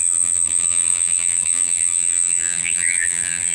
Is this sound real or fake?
fake